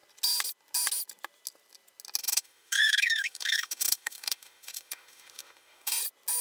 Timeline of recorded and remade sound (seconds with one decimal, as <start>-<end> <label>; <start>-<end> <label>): 0.0-2.2 recorded; 2.2-6.0 remade; 6.0-6.4 recorded